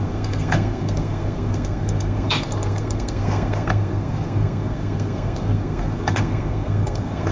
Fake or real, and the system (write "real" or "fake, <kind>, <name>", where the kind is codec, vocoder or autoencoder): fake, codec, SNAC